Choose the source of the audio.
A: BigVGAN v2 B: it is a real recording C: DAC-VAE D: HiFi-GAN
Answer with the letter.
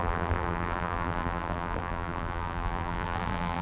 A